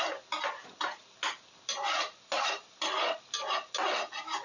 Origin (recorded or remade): recorded